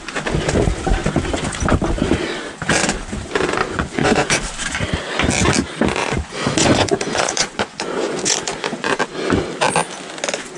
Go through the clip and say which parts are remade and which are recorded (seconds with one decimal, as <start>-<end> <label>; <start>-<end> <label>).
0.0-3.6 recorded; 3.6-4.4 remade; 4.4-6.0 recorded; 6.0-9.0 remade; 9.0-10.6 recorded